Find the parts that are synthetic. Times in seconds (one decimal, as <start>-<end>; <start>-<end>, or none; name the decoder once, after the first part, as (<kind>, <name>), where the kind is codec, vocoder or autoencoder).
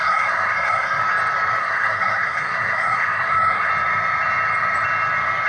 0.0-1.0 (codec, SNAC); 1.6-3.7